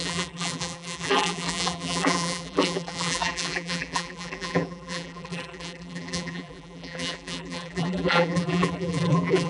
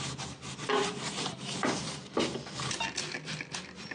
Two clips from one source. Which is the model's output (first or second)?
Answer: first